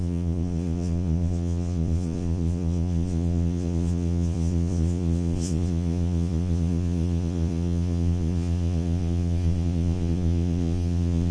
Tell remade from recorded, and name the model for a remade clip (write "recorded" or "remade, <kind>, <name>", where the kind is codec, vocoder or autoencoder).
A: remade, vocoder, Vocos